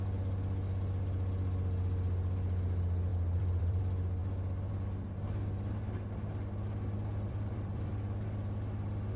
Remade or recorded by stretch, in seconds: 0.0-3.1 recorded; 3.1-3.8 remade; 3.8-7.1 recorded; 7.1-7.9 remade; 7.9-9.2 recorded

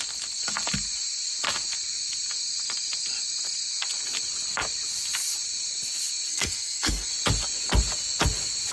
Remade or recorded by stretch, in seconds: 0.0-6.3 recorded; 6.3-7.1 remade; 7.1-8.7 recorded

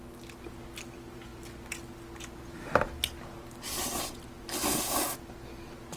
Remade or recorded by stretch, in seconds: 0.0-6.0 recorded